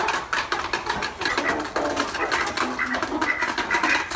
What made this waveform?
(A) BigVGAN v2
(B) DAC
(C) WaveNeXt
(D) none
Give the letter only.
D